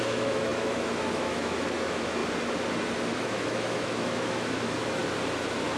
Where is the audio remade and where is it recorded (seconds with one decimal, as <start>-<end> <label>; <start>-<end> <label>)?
0.0-2.2 remade; 2.2-3.2 recorded; 3.2-5.0 remade; 5.0-5.8 recorded